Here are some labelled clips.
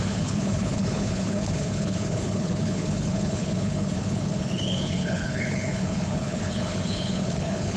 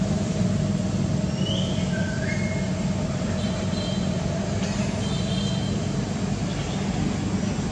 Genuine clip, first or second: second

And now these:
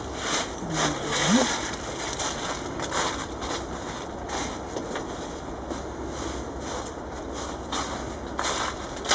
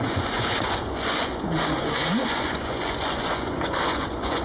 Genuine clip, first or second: first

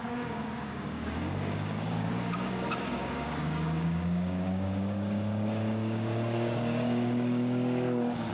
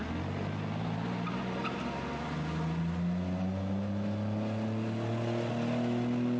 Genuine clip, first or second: second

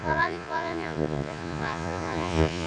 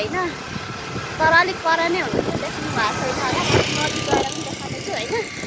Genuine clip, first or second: second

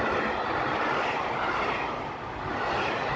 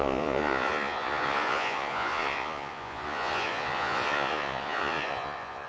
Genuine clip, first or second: first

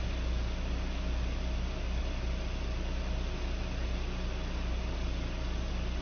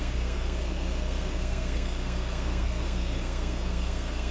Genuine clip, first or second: first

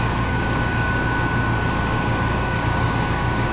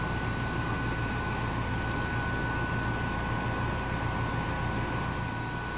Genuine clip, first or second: second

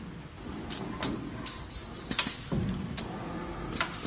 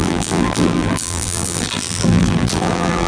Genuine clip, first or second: first